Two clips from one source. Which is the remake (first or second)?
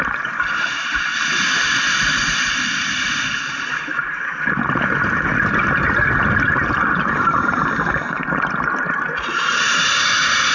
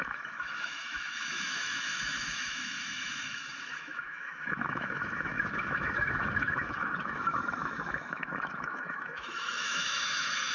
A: second